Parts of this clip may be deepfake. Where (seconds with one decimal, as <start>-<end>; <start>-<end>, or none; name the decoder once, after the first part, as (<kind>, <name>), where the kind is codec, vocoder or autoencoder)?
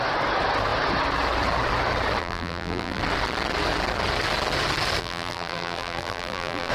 2.2-3.0 (vocoder, BigVGAN v2); 5.0-6.7